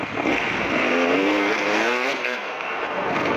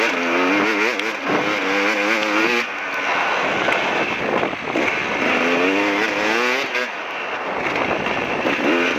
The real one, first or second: second